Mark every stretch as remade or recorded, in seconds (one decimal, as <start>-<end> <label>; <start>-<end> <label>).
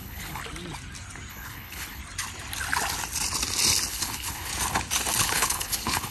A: 0.0-0.4 remade; 0.4-1.3 recorded; 1.3-2.0 remade; 2.0-3.9 recorded; 3.9-4.5 remade; 4.5-5.2 recorded; 5.2-6.1 remade